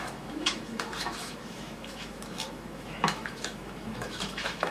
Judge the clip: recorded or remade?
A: remade